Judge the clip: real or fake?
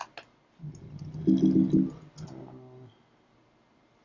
real